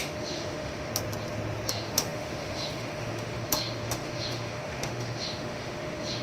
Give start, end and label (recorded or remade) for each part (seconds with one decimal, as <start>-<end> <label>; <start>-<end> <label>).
0.0-0.9 remade; 0.9-1.7 recorded; 1.7-6.2 remade